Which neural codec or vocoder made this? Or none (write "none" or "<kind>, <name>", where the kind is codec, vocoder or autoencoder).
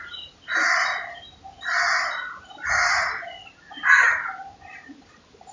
none